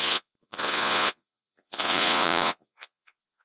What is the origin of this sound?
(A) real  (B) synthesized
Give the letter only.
B